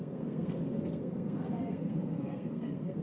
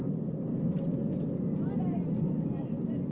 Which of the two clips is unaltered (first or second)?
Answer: second